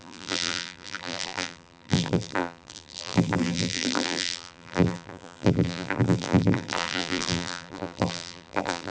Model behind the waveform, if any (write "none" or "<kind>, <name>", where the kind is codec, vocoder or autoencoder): vocoder, BigVGAN v2